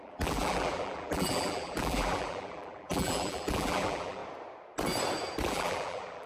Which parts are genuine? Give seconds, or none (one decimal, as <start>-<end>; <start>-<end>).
4.2-5.5